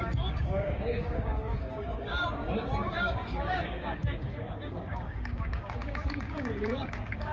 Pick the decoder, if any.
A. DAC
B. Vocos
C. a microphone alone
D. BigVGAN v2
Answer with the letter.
A